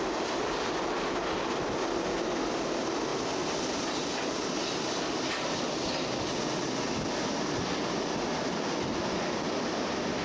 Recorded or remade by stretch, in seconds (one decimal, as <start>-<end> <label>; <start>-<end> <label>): 0.0-10.2 recorded